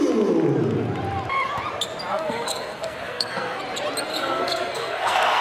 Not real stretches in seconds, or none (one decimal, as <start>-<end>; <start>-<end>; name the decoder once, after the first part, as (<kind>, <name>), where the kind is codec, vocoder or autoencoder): 2.1-3.6 (codec, SNAC); 4.1-5.4